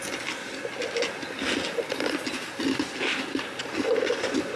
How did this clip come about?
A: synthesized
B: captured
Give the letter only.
B